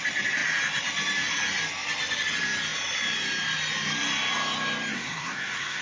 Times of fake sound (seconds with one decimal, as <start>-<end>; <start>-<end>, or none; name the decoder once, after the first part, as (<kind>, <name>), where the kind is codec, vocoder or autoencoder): 4.9-5.8 (codec, SNAC)